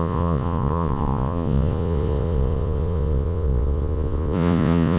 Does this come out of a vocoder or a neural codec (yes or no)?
yes